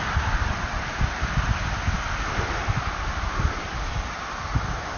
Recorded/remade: recorded